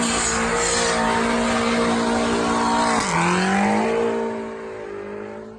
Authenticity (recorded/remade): recorded